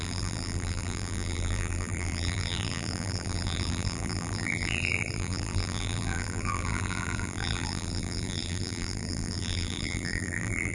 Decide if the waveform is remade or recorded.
remade